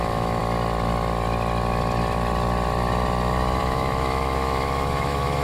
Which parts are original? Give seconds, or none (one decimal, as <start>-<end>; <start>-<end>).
0.4-3.6